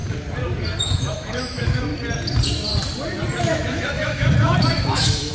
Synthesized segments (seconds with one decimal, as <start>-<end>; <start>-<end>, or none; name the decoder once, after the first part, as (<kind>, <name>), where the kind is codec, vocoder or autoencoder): 0.8-1.9 (autoencoder, DAC-VAE); 3.4-5.3